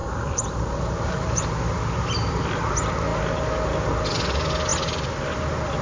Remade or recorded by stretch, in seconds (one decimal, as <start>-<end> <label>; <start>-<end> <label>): 0.0-1.6 remade; 1.6-5.8 recorded